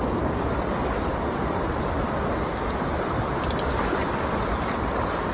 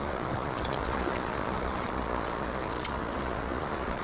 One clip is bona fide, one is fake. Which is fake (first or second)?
second